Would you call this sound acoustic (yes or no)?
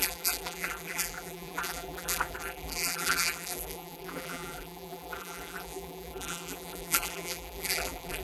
no